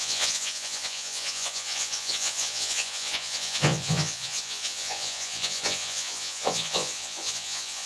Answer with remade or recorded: remade